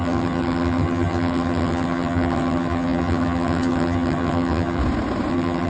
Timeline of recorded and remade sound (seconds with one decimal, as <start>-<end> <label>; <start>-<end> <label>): 0.0-4.8 remade; 4.8-5.3 recorded; 5.3-5.7 remade